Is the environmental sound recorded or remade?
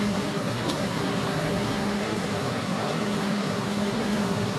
remade